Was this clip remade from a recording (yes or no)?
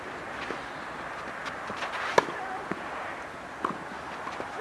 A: no